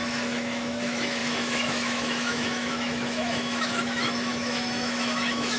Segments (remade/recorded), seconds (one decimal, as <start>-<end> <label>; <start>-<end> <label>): 0.0-5.6 remade